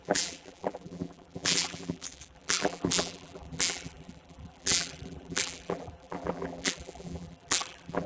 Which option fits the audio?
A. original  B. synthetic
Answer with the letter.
B